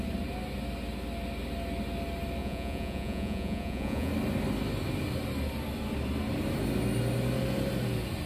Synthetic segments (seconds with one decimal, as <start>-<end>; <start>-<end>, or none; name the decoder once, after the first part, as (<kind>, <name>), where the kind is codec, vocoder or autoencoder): 2.4-4.1 (vocoder, Vocos)